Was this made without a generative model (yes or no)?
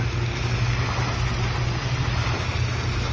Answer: yes